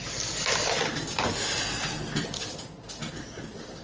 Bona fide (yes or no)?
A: yes